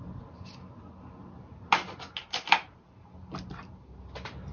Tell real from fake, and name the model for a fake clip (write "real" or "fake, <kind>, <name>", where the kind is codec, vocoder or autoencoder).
real